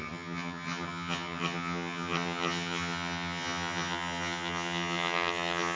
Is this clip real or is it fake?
fake